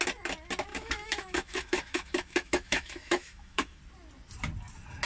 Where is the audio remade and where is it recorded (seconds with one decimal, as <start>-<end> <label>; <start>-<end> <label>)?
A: 0.0-0.7 recorded; 0.7-3.8 remade; 3.8-5.1 recorded

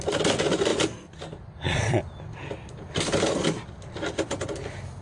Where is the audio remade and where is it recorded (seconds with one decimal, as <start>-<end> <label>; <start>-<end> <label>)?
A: 0.0-5.0 recorded

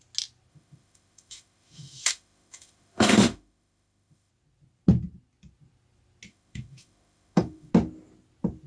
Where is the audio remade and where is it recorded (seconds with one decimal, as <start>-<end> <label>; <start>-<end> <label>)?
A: 0.0-0.5 recorded; 0.5-4.3 remade; 4.3-6.3 recorded; 6.3-7.7 remade; 7.7-8.7 recorded

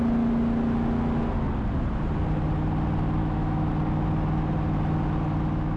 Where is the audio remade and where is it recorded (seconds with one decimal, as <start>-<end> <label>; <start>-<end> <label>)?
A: 0.0-3.2 recorded; 3.2-3.7 remade; 3.7-5.8 recorded

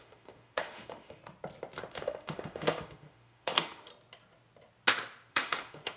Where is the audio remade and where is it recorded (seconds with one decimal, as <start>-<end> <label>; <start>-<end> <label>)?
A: 0.0-1.2 remade; 1.2-1.9 recorded; 1.9-3.9 remade; 3.9-5.3 recorded; 5.3-6.0 remade